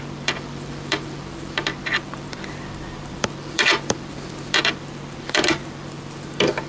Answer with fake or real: fake